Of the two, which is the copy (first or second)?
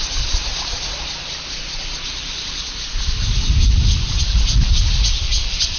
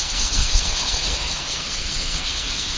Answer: second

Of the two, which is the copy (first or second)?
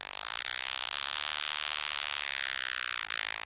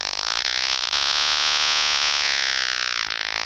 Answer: second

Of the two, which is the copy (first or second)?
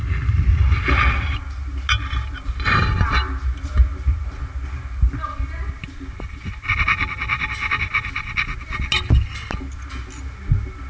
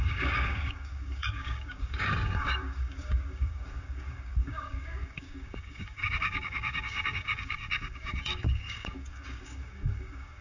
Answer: second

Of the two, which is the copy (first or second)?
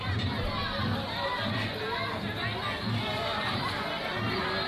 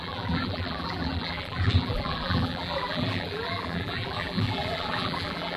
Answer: second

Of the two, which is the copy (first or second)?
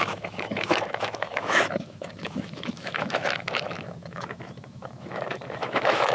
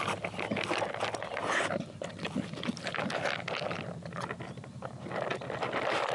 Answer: first